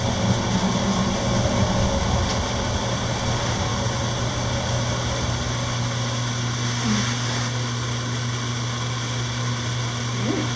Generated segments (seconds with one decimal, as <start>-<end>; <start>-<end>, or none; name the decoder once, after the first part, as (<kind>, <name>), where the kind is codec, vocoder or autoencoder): none